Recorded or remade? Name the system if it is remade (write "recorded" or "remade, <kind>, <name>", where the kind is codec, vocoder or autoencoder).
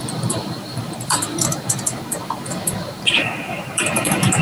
remade, vocoder, BigVGAN v2